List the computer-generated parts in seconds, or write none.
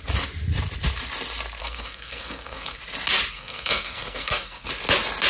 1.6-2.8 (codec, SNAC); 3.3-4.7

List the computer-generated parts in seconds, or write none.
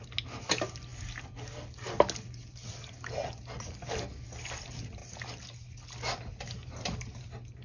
none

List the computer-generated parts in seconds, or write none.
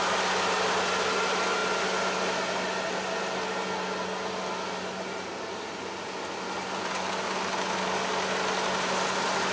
none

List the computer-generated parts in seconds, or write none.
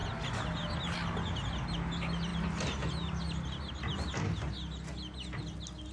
none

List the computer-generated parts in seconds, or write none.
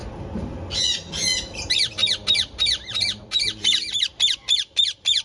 0.0-5.2 (vocoder, BigVGAN v2)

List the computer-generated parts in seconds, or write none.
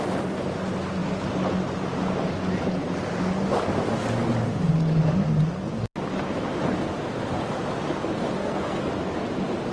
8.4-8.9 (codec, SNAC)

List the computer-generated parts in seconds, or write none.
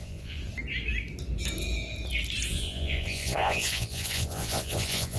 0.0-0.4 (vocoder, Vocos); 2.5-5.2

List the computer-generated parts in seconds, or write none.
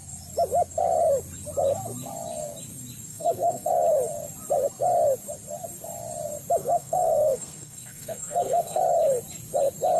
3.1-3.7 (codec, SNAC); 6.6-8.8